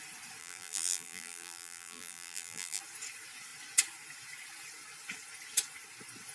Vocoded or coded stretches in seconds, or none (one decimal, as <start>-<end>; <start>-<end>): 0.4-2.8